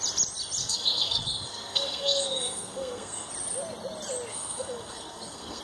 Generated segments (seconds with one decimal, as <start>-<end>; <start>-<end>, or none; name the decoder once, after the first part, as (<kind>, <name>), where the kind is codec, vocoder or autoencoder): 0.6-3.3 (codec, SNAC); 4.3-5.6

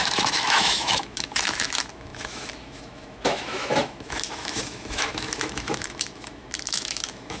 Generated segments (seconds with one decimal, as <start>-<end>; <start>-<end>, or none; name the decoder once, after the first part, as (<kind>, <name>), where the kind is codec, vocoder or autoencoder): 0.0-7.4 (autoencoder, DAC-VAE)

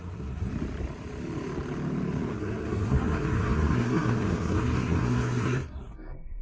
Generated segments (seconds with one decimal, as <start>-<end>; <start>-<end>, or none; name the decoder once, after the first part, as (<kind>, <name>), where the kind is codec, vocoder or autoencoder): 0.0-0.5 (codec, SNAC); 2.3-6.4

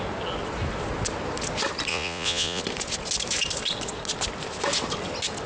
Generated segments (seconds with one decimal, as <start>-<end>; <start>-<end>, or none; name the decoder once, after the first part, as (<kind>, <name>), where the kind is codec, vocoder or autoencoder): 1.9-2.6 (vocoder, Vocos)

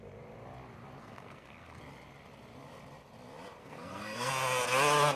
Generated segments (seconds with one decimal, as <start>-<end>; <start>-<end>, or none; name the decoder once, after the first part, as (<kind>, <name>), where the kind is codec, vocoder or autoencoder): 1.0-1.8 (codec, SNAC); 3.6-4.3

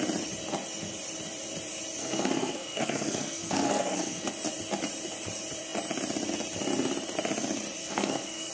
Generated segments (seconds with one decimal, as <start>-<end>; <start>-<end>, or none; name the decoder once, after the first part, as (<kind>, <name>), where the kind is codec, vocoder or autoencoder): 2.0-4.3 (codec, SNAC); 7.8-8.5